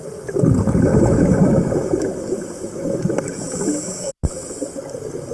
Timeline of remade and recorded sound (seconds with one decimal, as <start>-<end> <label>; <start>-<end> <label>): 0.0-0.9 recorded; 0.9-4.1 remade; 4.1-5.3 recorded